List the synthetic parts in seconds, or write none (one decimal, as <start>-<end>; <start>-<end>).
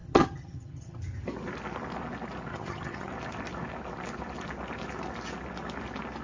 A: 0.0-1.0; 2.5-3.1